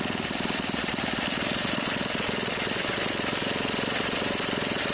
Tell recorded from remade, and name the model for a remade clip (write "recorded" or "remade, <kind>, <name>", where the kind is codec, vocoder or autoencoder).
recorded